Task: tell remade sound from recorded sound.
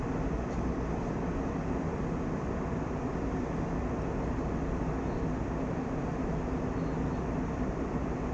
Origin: recorded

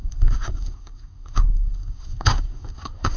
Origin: remade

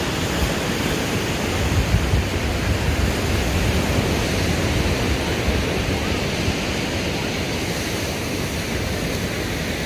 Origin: recorded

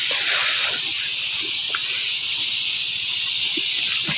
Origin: recorded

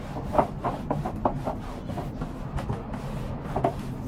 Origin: recorded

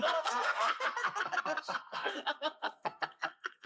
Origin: remade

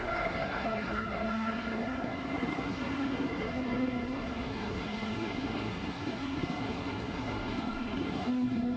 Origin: remade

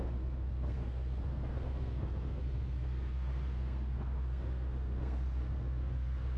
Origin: remade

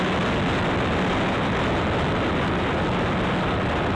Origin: recorded